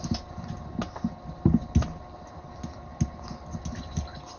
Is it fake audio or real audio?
real